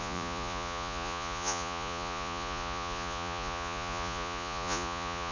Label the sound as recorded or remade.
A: remade